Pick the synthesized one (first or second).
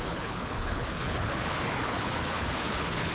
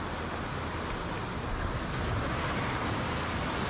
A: first